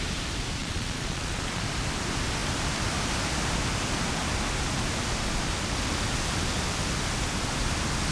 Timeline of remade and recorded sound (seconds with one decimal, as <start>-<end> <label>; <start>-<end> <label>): 0.0-0.6 recorded; 0.6-1.6 remade; 1.6-8.1 recorded